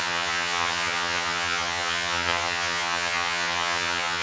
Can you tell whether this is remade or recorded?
remade